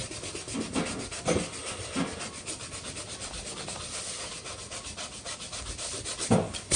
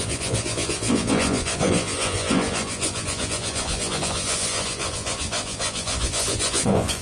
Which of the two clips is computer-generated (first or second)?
second